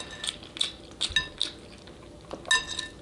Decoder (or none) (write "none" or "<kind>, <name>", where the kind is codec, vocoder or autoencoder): none